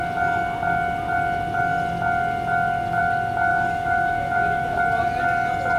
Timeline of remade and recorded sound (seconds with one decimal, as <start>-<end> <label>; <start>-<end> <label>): 0.0-3.5 recorded; 3.5-4.8 remade; 4.8-5.8 recorded